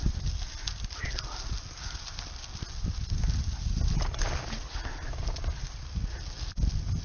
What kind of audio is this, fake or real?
real